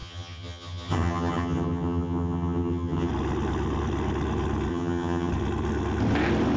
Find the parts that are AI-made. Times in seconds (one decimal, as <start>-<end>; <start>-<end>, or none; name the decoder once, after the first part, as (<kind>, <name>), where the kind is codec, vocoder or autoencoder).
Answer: 0.0-3.1 (vocoder, HiFi-GAN); 4.7-5.3